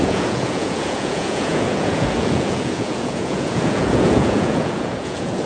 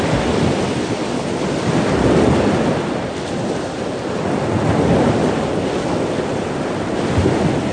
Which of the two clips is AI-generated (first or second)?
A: first